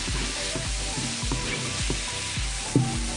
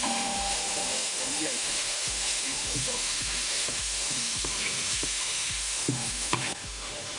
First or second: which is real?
first